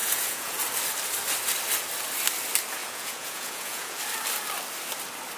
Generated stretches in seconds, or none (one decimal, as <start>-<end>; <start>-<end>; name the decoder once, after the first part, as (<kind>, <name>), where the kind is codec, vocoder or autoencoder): 0.0-0.6 (vocoder, Vocos); 2.8-4.0

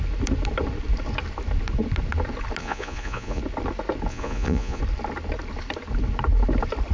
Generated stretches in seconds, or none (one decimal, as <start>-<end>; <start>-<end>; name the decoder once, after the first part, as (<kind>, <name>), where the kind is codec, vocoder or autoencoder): 2.6-3.4 (vocoder, Vocos); 4.1-4.8

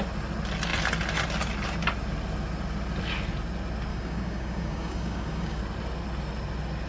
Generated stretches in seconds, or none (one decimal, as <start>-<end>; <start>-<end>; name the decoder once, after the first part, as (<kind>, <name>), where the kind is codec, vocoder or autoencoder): 3.9-5.6 (codec, DAC)

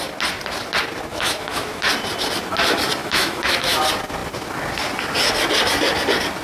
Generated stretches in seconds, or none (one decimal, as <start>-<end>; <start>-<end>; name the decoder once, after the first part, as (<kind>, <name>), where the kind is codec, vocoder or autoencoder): 1.1-1.9 (autoencoder, DAC-VAE); 3.0-3.8

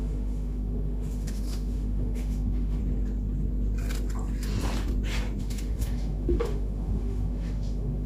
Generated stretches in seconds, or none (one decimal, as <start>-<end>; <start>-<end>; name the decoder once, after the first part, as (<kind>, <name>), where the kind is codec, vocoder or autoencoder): 0.0-2.8 (autoencoder, DAC-VAE); 5.4-8.1

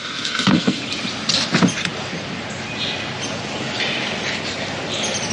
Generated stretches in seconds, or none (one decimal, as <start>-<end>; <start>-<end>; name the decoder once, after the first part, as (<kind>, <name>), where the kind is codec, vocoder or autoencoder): 0.0-0.8 (codec, SNAC)